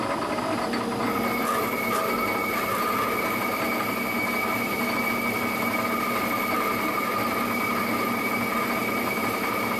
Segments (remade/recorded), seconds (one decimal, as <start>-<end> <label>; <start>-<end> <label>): 0.0-9.8 recorded